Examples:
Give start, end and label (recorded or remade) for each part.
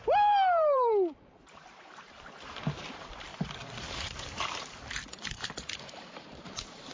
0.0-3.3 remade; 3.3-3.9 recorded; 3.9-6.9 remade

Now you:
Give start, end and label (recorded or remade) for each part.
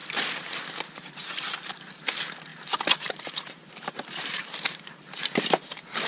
0.0-0.5 remade; 0.5-1.2 recorded; 1.2-1.8 remade; 1.8-2.5 recorded; 2.5-6.1 remade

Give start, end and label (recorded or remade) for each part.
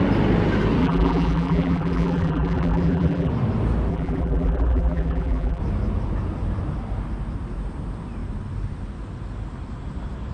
0.0-0.8 recorded; 0.8-3.3 remade; 3.3-3.9 recorded; 3.9-5.6 remade; 5.6-10.3 recorded